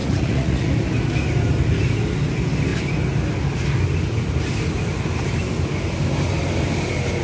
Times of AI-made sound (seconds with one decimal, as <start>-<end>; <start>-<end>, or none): 0.0-0.7